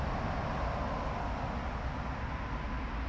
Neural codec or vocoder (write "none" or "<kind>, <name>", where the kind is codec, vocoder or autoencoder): none